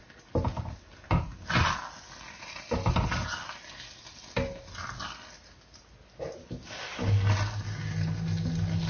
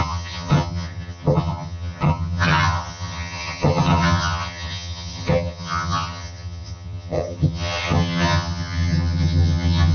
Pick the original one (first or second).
first